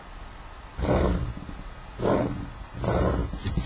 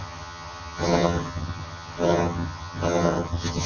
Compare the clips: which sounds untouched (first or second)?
first